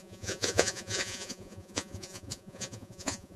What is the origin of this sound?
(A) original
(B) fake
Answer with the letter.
B